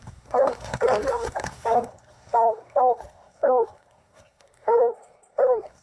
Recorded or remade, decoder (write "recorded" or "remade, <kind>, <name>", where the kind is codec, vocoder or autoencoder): remade, codec, SNAC